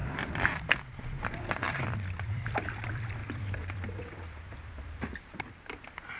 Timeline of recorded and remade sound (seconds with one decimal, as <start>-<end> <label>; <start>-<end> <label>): 0.0-2.3 remade; 2.3-3.2 recorded; 3.2-5.4 remade; 5.4-6.2 recorded